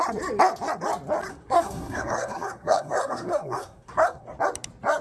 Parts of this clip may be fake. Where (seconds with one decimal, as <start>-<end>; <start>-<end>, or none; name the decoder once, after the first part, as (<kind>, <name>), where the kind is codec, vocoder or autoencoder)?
1.3-4.3 (codec, SNAC)